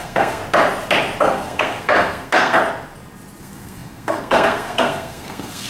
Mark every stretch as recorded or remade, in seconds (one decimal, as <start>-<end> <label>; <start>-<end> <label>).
0.0-0.4 remade; 0.4-1.2 recorded; 1.2-2.6 remade; 2.6-3.4 recorded; 3.4-5.7 remade